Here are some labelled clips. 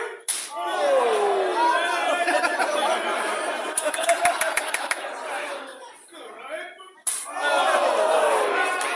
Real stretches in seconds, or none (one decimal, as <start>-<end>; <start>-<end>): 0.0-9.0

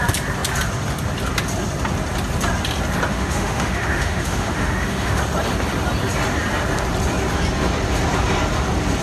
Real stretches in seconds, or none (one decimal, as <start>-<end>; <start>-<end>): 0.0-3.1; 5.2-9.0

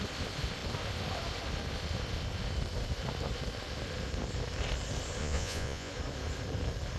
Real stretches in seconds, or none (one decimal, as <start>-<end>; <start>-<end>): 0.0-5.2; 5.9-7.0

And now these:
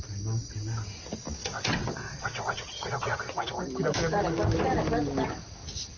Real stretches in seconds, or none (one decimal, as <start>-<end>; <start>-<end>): 0.0-1.4; 3.6-6.0